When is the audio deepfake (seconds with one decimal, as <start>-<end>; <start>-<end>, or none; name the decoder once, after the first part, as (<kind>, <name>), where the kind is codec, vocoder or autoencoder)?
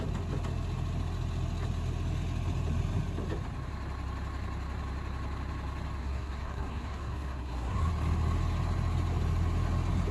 6.0-7.9 (codec, SNAC)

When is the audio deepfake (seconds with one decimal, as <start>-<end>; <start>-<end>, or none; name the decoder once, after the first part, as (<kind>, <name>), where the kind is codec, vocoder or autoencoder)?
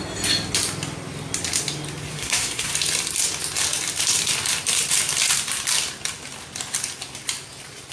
2.1-2.7 (codec, SNAC)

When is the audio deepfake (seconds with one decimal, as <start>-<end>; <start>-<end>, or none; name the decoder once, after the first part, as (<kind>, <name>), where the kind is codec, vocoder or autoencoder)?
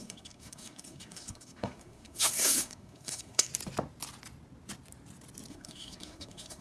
0.0-3.5 (codec, SNAC); 5.5-6.6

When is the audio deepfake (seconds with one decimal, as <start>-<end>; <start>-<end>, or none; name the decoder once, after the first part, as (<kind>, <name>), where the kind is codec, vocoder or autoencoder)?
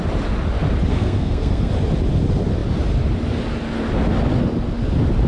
0.9-1.7 (codec, SNAC)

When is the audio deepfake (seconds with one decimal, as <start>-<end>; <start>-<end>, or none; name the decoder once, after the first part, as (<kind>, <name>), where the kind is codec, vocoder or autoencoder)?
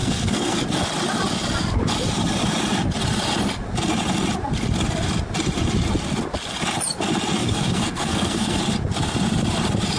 0.0-0.6 (codec, SNAC); 7.4-8.6